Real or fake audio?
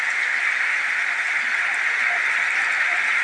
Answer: real